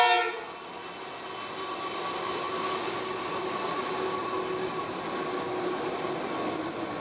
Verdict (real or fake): real